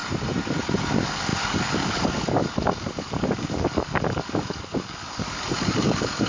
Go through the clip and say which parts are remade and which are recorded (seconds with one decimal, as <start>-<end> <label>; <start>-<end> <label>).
0.0-0.8 recorded; 0.8-6.3 remade